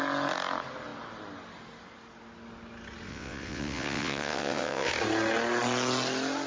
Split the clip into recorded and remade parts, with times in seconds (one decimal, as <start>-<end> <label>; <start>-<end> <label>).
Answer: 0.0-3.1 recorded; 3.1-4.9 remade; 4.9-6.5 recorded